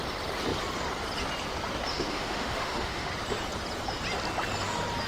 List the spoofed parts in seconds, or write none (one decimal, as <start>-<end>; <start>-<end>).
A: 1.9-3.1